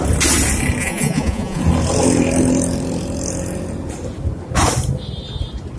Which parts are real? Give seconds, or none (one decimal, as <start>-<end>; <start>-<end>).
0.0-0.8; 1.6-5.8